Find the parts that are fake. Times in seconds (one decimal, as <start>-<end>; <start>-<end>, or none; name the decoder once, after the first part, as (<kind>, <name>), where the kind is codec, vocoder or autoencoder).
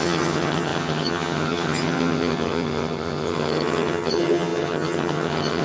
0.0-5.6 (vocoder, HiFi-GAN)